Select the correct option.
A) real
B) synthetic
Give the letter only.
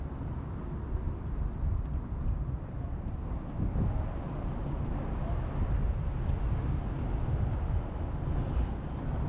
A